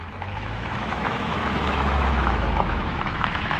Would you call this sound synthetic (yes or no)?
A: yes